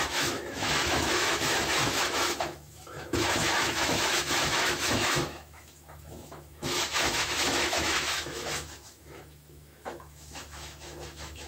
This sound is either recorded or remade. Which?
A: remade